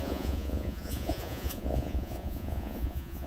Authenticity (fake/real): fake